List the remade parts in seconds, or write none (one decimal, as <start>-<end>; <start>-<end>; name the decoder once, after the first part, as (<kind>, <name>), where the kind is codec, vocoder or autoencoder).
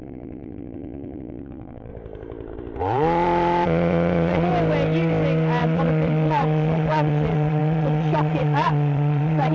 0.0-1.9 (vocoder, Vocos); 2.8-4.5; 5.6-9.5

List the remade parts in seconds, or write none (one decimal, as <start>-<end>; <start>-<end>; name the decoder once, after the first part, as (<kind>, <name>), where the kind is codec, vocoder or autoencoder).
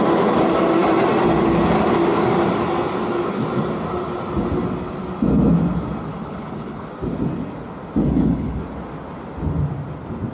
6.1-6.9 (codec, HILCodec); 8.0-8.6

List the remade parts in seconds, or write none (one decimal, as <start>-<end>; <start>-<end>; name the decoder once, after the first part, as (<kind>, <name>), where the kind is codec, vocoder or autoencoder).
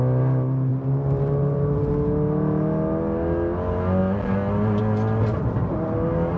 0.7-1.9 (vocoder, BigVGAN v2)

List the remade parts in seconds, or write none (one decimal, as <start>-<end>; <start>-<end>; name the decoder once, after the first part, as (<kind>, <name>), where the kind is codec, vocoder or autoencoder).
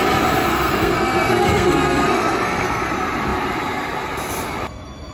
0.5-2.9 (codec, SNAC)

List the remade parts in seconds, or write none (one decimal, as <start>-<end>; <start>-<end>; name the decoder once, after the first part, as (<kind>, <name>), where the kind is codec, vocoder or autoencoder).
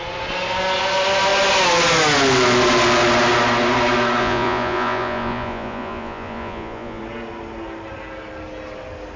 4.2-7.0 (vocoder, Vocos)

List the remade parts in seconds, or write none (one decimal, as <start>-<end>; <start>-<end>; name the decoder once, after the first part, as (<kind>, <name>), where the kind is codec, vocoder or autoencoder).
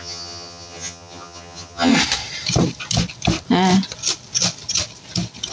0.0-1.9 (vocoder, HiFi-GAN)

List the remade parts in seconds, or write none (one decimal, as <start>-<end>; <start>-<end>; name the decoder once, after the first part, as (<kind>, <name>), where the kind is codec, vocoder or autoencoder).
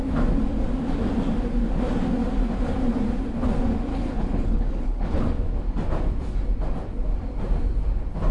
3.9-5.2 (codec, HILCodec)